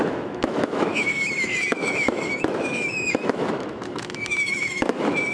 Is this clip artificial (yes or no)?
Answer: yes